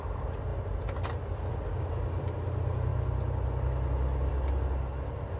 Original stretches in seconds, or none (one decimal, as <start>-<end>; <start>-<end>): 0.0-5.4